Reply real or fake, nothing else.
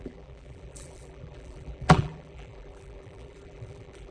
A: fake